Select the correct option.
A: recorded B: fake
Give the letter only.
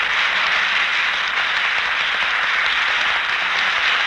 A